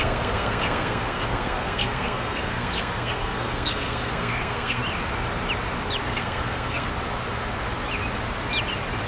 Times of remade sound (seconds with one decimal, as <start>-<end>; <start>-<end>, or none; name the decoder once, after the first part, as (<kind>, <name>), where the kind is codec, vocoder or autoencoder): 0.0-4.8 (codec, SNAC); 6.1-6.9